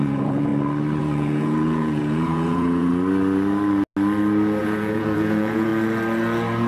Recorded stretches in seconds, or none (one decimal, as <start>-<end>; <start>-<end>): 0.5-1.0; 2.9-4.6; 5.7-6.7